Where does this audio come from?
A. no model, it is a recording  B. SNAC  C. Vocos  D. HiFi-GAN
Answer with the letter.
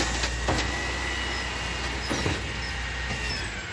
A